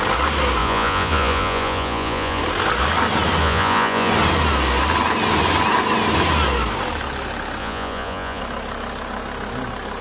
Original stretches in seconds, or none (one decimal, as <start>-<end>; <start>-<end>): 0.0-0.6; 2.4-3.4; 4.1-7.6; 8.4-10.0